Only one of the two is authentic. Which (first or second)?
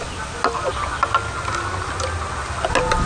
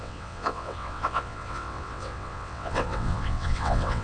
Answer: first